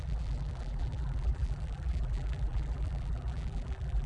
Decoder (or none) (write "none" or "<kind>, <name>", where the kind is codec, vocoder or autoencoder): vocoder, BigVGAN v2